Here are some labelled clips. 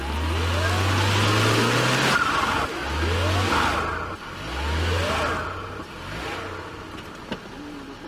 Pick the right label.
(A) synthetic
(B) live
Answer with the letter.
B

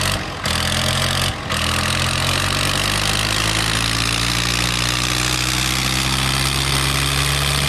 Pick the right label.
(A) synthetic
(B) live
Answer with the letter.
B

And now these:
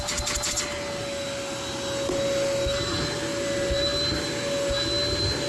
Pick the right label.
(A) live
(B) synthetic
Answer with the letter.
A